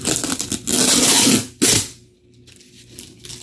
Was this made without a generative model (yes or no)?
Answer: yes